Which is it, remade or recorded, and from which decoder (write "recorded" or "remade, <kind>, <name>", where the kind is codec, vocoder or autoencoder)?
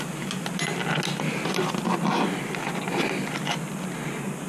recorded